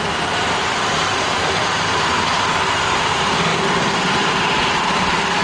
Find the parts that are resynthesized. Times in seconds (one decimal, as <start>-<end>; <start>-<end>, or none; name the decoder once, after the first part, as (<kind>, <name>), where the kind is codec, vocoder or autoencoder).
0.0-5.4 (vocoder, BigVGAN v2)